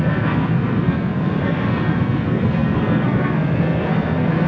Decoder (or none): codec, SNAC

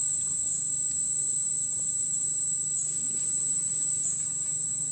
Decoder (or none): none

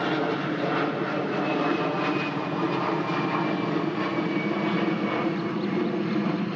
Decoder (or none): none